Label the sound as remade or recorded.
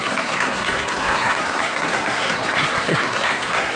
remade